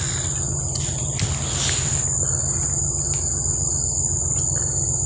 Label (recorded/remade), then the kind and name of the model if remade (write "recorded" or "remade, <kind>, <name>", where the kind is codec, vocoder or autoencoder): recorded